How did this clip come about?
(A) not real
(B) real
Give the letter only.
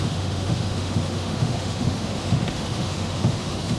A